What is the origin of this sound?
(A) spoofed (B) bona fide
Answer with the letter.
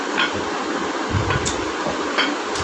B